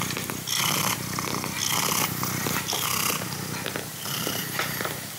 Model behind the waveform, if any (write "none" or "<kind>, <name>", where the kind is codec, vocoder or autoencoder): none